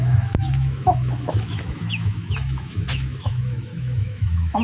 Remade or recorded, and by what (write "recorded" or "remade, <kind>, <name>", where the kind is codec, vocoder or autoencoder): remade, autoencoder, DAC-VAE